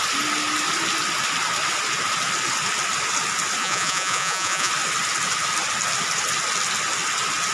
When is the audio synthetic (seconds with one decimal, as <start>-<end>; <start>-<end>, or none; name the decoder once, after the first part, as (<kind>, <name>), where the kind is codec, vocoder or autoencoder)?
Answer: 3.6-4.7 (vocoder, Vocos)